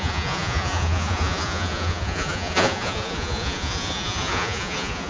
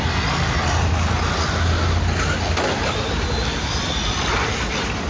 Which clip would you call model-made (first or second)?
first